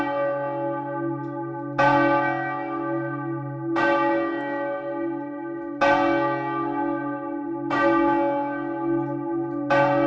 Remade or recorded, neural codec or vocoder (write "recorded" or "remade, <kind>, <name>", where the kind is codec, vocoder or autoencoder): recorded